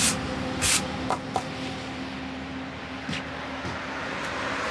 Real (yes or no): yes